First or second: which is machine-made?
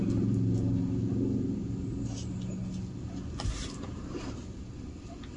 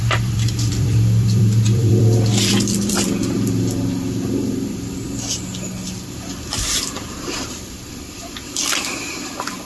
second